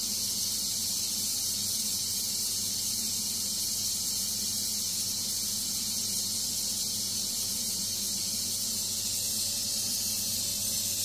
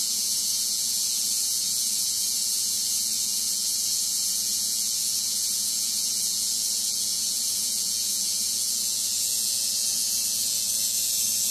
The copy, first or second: second